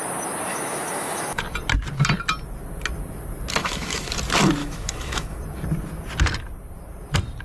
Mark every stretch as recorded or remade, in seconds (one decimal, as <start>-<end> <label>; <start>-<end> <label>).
0.0-0.5 recorded; 0.5-1.4 remade; 1.4-3.6 recorded; 3.6-4.1 remade; 4.1-4.6 recorded; 4.6-5.4 remade; 5.4-7.4 recorded